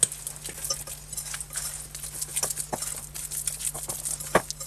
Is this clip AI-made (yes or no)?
no